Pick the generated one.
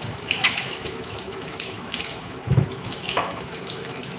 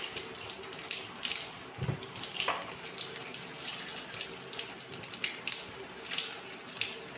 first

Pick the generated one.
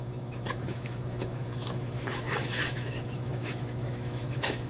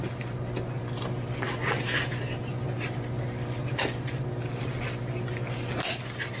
first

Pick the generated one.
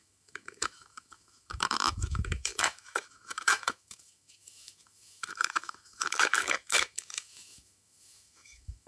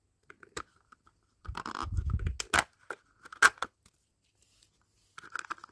first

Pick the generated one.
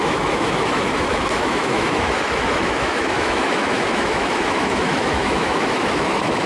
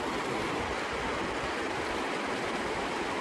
first